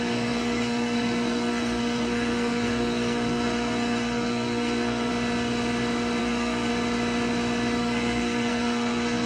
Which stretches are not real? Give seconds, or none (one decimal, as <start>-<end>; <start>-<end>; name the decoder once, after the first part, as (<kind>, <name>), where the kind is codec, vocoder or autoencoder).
0.0-5.1 (codec, SNAC); 6.2-6.7; 7.8-9.3